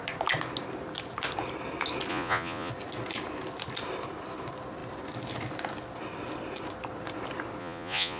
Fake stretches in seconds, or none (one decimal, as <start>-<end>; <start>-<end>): 2.1-2.7; 7.6-8.2